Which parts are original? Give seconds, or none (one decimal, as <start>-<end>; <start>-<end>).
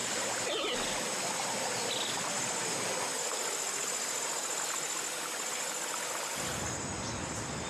0.0-7.7